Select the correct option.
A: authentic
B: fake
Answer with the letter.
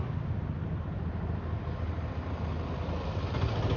A